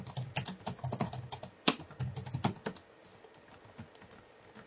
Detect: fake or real real